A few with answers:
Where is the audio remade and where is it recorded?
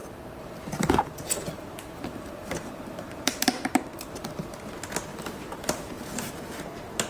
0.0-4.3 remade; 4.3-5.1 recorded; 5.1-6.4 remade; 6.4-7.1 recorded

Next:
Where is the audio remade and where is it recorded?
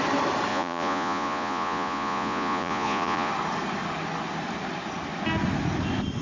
0.0-0.5 recorded; 0.5-3.3 remade; 3.3-6.2 recorded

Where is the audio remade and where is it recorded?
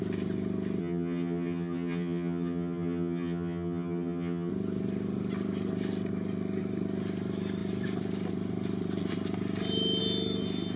0.0-0.8 recorded; 0.8-4.5 remade; 4.5-10.8 recorded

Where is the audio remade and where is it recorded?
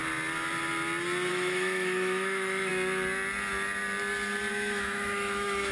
0.0-1.3 recorded; 1.3-2.7 remade; 2.7-4.5 recorded; 4.5-5.7 remade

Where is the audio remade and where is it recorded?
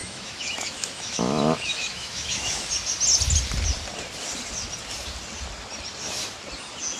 0.0-2.7 remade; 2.7-7.0 recorded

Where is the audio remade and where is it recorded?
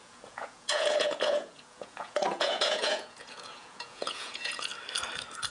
0.0-4.7 remade; 4.7-5.5 recorded